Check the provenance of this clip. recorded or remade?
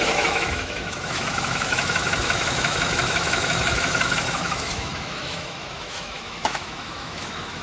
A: remade